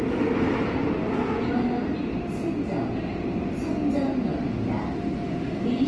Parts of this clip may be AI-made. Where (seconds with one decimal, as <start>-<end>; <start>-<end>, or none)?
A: none